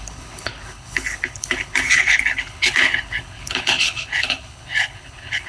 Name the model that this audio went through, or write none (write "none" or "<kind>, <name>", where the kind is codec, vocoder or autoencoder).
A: codec, HILCodec